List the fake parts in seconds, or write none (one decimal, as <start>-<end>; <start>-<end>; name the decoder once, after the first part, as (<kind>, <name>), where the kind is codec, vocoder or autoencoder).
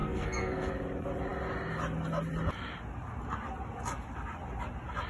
0.0-0.7 (codec, SNAC)